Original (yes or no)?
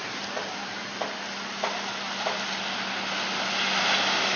yes